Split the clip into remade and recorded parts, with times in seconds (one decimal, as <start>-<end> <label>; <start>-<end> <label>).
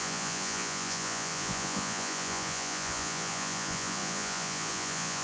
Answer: 0.0-5.2 remade